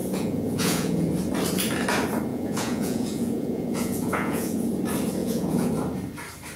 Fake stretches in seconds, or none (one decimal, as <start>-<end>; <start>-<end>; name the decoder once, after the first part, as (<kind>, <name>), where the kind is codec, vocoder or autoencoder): 0.0-1.1 (vocoder, Vocos); 2.3-4.7; 5.2-5.7